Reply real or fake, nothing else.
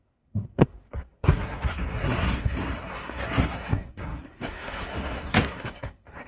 fake